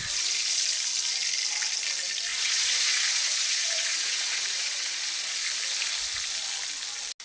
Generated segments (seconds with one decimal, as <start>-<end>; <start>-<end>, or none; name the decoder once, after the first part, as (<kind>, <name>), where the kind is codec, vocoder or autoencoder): 2.3-5.4 (vocoder, Vocos)